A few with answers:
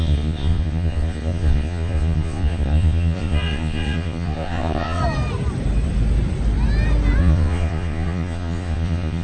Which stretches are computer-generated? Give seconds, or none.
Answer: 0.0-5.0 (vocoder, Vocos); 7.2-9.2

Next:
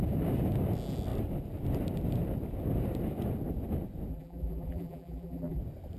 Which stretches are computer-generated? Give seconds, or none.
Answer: 4.1-5.6 (vocoder, BigVGAN v2)

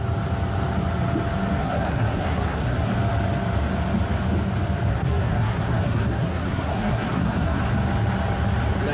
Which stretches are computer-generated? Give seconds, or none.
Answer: 1.6-2.9 (codec, SNAC); 4.9-7.6

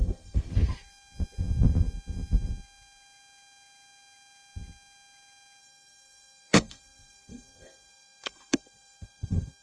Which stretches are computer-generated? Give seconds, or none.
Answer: 0.0-0.5 (codec, SNAC); 5.6-9.6

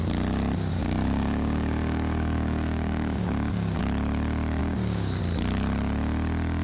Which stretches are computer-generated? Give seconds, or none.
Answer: 0.7-3.8 (codec, DAC); 4.6-5.2